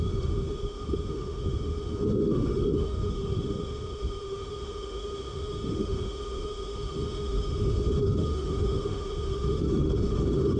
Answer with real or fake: fake